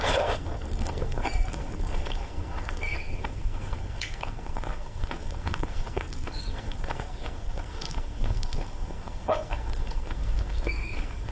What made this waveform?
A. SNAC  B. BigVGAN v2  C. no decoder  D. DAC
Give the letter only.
A